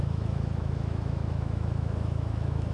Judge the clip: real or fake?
fake